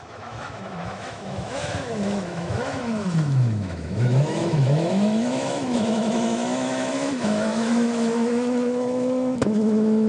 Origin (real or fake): fake